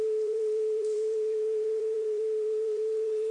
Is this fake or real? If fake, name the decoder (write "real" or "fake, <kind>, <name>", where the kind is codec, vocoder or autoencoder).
fake, vocoder, BigVGAN v2